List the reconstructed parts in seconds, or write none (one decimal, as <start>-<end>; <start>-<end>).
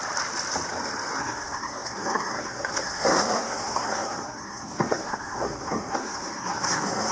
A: 1.2-7.1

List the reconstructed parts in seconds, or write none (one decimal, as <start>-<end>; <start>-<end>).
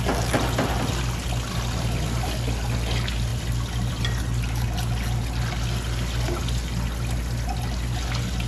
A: none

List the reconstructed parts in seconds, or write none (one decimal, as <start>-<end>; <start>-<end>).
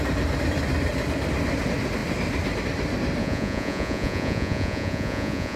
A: 3.2-5.6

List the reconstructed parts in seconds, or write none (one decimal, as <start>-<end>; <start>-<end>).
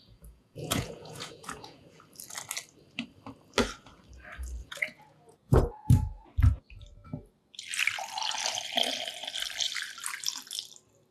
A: 0.0-2.0; 4.6-5.6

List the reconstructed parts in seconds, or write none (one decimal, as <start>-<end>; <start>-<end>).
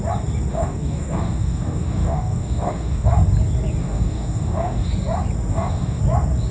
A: 0.5-3.1; 3.8-4.9; 5.5-6.0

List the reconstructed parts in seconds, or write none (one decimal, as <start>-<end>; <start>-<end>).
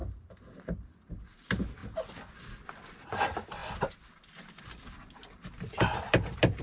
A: 1.2-1.8; 2.3-3.6; 5.7-6.6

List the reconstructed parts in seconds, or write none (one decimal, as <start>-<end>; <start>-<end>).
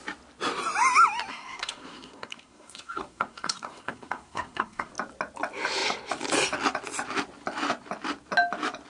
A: 1.3-4.9